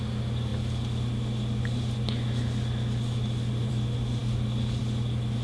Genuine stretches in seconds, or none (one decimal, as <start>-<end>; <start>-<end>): 0.0-5.4